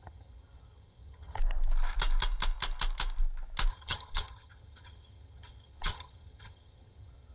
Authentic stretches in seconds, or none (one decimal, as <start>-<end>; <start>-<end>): 1.4-3.7